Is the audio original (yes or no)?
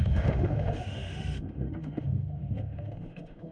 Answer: no